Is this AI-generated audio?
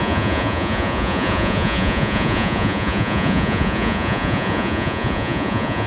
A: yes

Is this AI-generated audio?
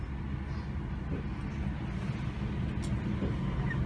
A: no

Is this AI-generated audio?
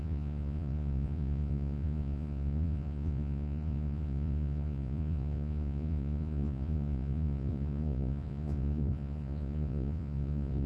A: yes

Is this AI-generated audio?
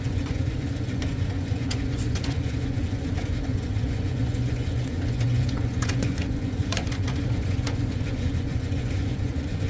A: yes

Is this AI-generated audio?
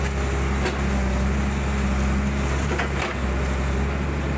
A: no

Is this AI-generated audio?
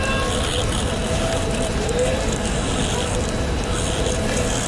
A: no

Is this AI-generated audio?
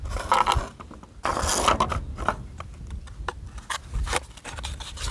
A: no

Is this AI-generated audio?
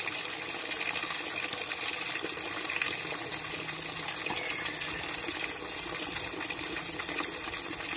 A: no